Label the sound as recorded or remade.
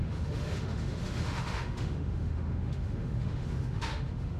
remade